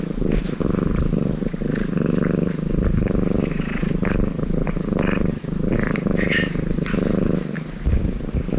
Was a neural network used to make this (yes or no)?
no